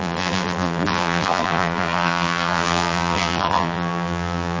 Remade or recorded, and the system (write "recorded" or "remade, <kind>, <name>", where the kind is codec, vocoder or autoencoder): remade, vocoder, BigVGAN v2